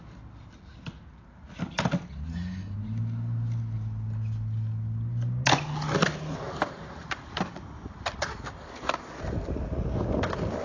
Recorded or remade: recorded